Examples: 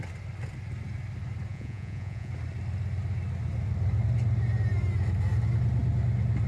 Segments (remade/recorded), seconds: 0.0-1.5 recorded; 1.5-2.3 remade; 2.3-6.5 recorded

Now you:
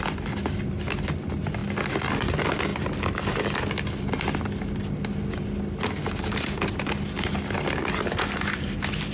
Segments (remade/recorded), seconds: 0.0-9.1 recorded

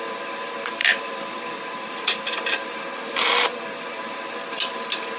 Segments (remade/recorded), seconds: 0.0-5.2 remade